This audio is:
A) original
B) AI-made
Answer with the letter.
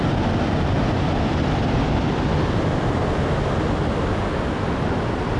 A